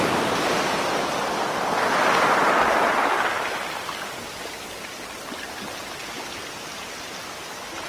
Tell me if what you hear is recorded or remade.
recorded